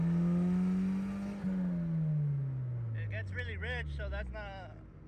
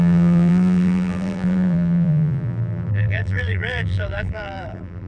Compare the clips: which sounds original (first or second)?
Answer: first